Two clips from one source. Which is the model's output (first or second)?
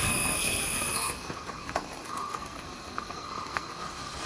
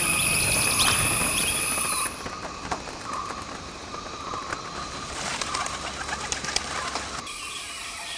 first